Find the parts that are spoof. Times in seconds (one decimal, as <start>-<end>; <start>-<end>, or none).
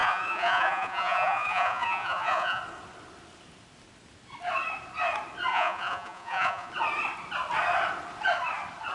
0.0-2.6; 5.5-6.7